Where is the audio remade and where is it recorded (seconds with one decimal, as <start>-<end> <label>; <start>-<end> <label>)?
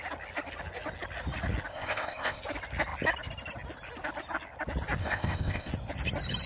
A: 0.0-1.7 recorded; 1.7-2.4 remade; 2.4-5.0 recorded; 5.0-5.7 remade; 5.7-6.5 recorded